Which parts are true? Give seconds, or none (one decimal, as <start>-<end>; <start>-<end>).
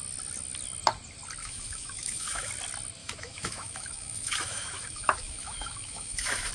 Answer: 0.0-1.4; 2.5-3.0